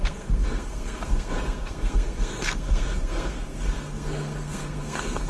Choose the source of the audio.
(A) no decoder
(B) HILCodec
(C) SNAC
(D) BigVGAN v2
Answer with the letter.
C